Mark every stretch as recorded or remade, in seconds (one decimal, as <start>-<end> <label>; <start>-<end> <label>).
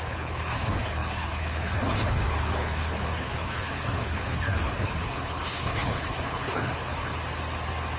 0.0-7.1 remade; 7.1-8.0 recorded